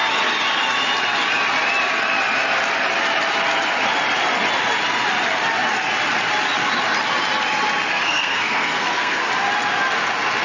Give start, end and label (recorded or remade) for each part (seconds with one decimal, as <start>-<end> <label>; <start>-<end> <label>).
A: 0.0-7.9 recorded; 7.9-9.3 remade; 9.3-10.4 recorded